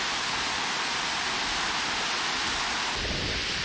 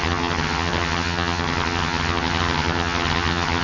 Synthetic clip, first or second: second